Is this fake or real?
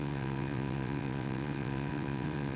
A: fake